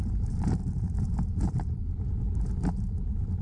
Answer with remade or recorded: remade